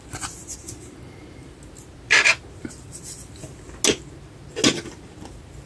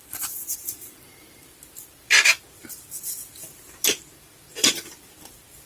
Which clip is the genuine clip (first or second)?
first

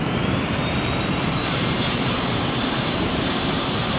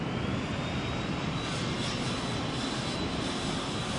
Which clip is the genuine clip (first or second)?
second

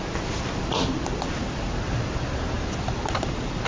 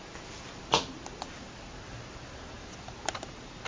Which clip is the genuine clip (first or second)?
second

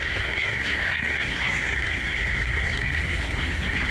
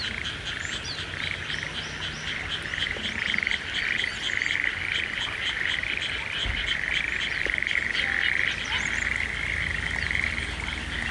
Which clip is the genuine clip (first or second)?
second